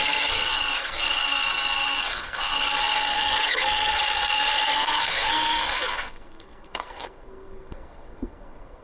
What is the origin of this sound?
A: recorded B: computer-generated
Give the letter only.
B